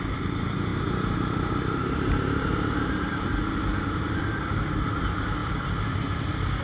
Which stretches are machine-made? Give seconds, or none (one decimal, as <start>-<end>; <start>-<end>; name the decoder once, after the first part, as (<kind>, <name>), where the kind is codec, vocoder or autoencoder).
0.0-3.3 (vocoder, BigVGAN v2); 3.8-6.6